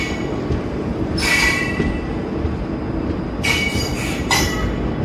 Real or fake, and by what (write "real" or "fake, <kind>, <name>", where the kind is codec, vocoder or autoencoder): real